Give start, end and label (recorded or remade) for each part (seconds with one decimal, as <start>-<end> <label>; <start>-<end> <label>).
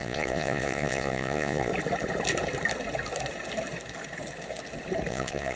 0.0-1.7 remade; 1.7-5.1 recorded; 5.1-5.6 remade